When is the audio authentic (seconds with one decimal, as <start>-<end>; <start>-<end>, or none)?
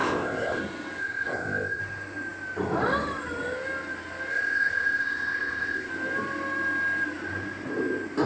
0.6-1.0; 1.8-4.3; 5.9-8.3